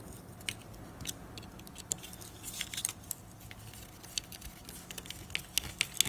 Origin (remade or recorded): recorded